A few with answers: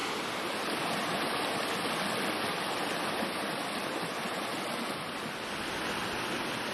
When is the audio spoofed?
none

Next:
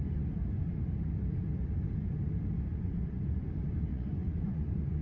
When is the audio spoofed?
2.7-3.5; 3.9-5.0

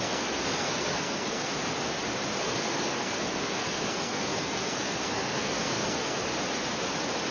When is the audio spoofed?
0.0-1.5; 2.4-6.2